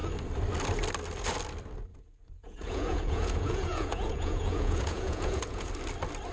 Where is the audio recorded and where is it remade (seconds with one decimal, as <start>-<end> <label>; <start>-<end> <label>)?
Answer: 0.0-1.9 recorded; 1.9-5.7 remade; 5.7-6.3 recorded